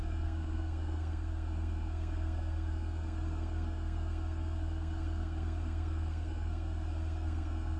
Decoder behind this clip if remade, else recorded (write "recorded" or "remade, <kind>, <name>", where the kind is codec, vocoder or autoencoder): remade, codec, SNAC